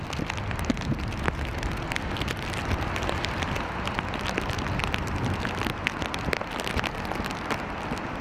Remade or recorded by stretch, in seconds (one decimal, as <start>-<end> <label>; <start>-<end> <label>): 0.0-1.5 recorded; 1.5-3.6 remade; 3.6-8.2 recorded